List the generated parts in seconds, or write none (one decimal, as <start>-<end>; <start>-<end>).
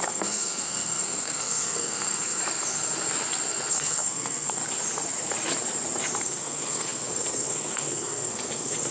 0.0-2.4; 3.7-4.6; 6.2-8.9